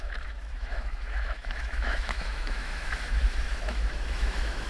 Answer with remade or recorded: remade